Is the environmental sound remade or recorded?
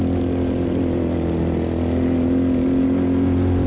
recorded